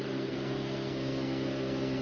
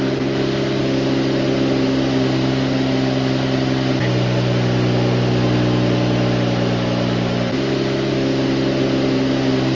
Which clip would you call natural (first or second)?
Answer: second